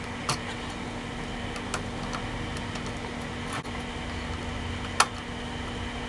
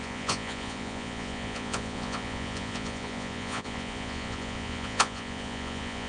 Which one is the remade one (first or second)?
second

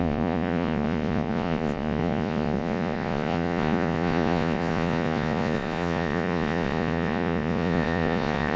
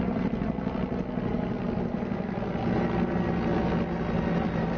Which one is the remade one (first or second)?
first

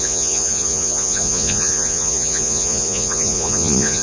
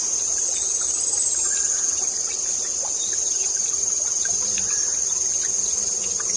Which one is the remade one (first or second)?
first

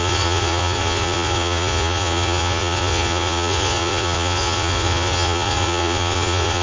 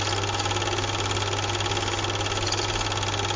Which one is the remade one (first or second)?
first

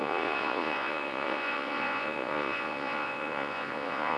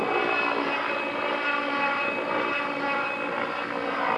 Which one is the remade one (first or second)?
first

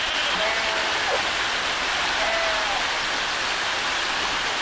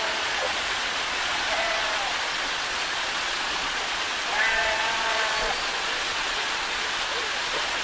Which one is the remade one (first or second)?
second